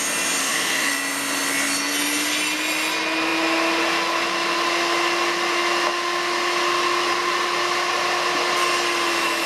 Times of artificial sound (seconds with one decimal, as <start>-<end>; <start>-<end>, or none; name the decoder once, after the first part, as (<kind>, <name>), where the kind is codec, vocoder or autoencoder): 0.4-0.9 (autoencoder, DAC-VAE)